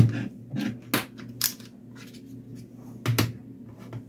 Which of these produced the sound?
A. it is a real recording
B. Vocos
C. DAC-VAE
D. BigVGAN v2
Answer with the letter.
A